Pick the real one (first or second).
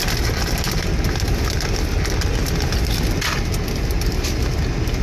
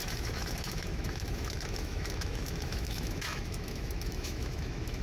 first